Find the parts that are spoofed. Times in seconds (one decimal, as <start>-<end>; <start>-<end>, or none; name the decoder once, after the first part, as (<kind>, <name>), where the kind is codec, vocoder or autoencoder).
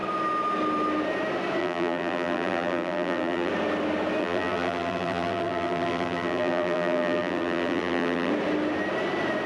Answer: 1.6-3.5 (vocoder, BigVGAN v2); 4.2-8.3